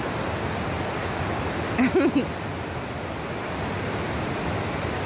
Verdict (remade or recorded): recorded